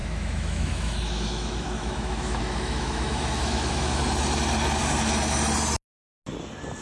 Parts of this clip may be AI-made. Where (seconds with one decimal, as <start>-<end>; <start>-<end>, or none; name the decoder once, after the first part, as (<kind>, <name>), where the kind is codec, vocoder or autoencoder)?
0.0-4.0 (autoencoder, DAC-VAE)